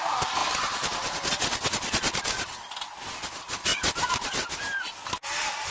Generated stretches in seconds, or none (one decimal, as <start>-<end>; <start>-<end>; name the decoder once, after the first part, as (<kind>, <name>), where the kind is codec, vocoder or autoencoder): none